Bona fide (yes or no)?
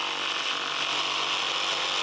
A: yes